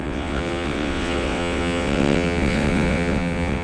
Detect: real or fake fake